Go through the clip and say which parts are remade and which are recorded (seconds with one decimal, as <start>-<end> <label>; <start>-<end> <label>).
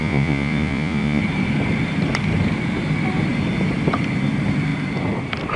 0.0-1.2 remade; 1.2-5.6 recorded